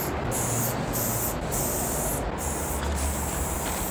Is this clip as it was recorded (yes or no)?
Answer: yes